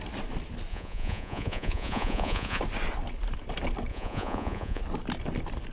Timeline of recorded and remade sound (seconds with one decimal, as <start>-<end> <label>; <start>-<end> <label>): 0.0-0.7 recorded; 0.7-2.6 remade; 2.6-3.9 recorded; 3.9-4.8 remade; 4.8-5.7 recorded